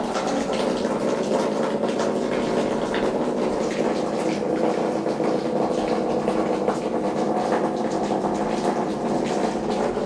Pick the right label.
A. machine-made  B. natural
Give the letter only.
B